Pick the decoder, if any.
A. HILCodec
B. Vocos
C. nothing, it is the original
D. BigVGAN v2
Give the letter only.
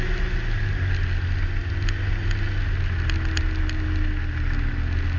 C